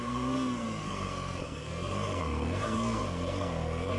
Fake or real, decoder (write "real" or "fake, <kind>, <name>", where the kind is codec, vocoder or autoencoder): fake, codec, SNAC